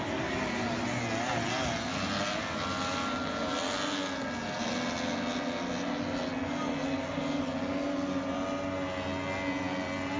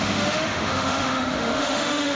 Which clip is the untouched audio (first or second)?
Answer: first